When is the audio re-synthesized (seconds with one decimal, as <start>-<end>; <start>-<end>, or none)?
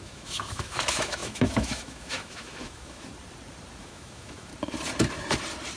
0.0-3.1; 3.8-4.5